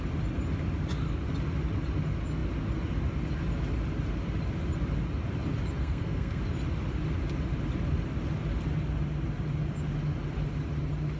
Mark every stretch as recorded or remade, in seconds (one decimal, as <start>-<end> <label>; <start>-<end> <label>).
0.0-5.8 recorded; 5.8-6.4 remade; 6.4-11.2 recorded